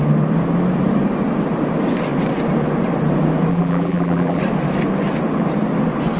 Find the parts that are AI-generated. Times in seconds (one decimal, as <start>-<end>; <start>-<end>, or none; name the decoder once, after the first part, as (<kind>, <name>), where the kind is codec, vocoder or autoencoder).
3.5-4.4 (vocoder, BigVGAN v2)